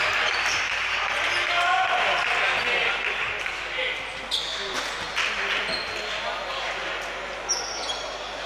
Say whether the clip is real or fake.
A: real